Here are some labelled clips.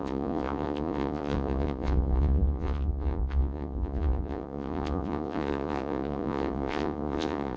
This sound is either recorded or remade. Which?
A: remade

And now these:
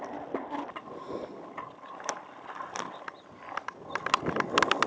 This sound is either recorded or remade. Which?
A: recorded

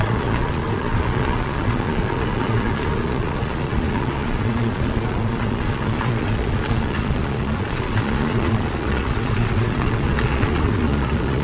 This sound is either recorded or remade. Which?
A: remade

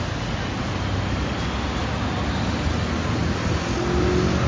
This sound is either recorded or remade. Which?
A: recorded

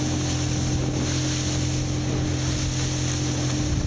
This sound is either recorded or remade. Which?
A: recorded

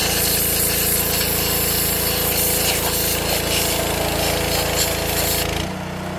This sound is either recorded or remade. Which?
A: recorded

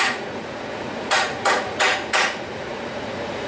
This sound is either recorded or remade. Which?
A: remade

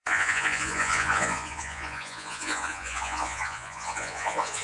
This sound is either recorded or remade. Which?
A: remade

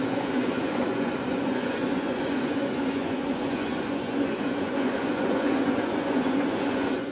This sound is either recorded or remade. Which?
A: remade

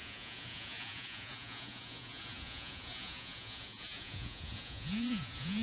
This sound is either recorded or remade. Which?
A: remade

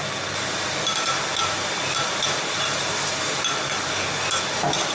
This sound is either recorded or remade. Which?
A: recorded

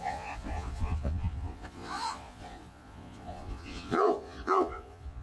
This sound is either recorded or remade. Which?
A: remade